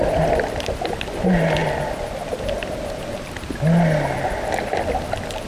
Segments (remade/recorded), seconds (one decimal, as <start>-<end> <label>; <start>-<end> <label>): 0.0-5.5 recorded